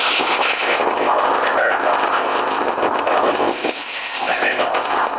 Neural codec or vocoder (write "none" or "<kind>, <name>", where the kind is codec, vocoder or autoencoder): codec, ZipCodec